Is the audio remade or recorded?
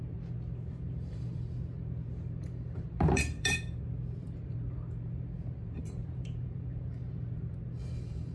remade